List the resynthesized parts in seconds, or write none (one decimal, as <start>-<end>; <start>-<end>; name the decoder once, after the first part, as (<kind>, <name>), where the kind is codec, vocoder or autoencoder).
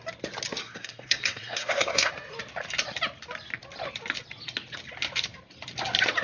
0.6-2.1 (codec, SNAC)